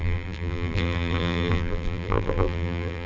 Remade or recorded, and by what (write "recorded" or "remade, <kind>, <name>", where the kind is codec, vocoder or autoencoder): remade, vocoder, BigVGAN v2